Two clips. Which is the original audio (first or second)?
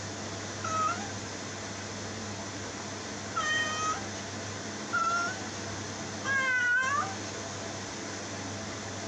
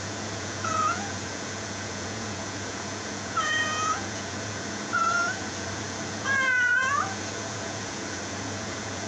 first